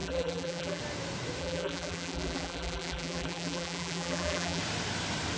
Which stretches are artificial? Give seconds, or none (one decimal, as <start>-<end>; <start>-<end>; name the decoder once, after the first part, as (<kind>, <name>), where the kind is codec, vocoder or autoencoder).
0.0-0.8 (vocoder, BigVGAN v2); 1.4-4.6